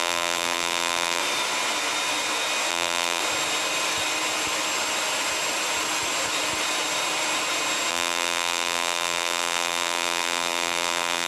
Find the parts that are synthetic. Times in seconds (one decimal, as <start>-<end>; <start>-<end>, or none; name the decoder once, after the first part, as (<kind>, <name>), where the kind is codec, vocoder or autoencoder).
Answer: 0.0-1.2 (vocoder, BigVGAN v2); 2.7-3.2; 7.9-11.3